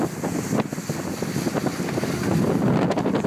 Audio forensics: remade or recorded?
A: recorded